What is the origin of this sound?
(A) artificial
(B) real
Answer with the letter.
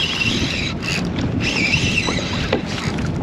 B